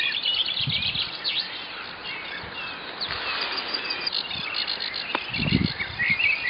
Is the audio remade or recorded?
recorded